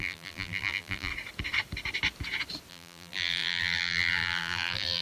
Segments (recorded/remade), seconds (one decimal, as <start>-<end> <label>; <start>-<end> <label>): 0.0-1.1 remade; 1.1-2.7 recorded; 2.7-5.0 remade